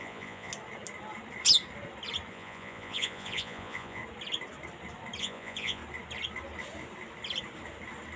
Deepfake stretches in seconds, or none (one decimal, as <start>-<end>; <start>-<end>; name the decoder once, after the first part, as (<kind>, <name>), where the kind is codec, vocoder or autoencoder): 0.0-0.5 (vocoder, Vocos); 2.3-4.0; 5.2-5.8